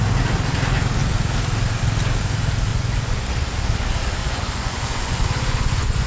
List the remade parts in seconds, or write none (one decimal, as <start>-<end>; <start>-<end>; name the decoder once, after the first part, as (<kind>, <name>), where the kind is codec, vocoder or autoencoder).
2.7-3.3 (vocoder, Vocos); 4.2-6.1